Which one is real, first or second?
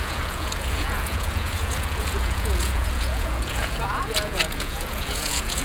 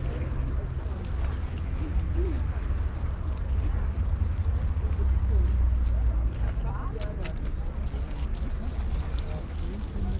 second